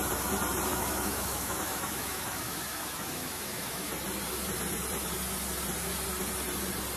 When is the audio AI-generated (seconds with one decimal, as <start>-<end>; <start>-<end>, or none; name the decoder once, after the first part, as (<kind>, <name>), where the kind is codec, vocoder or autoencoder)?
0.7-3.9 (autoencoder, DAC-VAE)